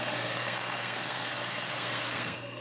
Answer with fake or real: fake